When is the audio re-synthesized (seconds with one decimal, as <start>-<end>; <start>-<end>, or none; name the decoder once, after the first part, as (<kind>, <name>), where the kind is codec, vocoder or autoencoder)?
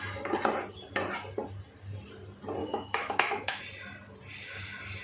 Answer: 2.6-3.6 (autoencoder, DAC-VAE)